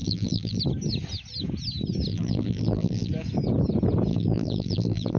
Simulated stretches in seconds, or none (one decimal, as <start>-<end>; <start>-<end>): 0.0-0.6; 2.1-3.1; 4.1-5.2